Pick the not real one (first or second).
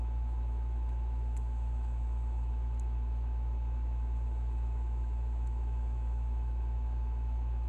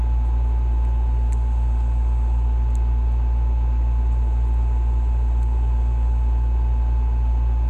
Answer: first